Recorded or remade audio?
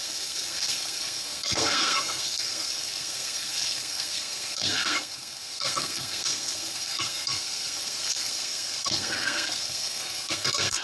remade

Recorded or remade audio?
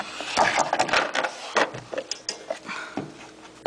recorded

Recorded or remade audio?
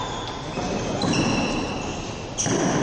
recorded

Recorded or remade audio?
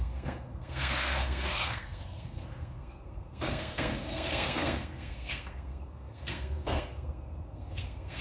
remade